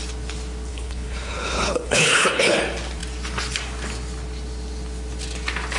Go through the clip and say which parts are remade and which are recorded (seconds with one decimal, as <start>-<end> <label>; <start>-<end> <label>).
0.0-0.7 recorded; 0.7-2.6 remade; 2.6-5.8 recorded